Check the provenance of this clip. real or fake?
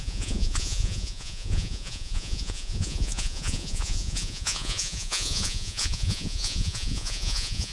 fake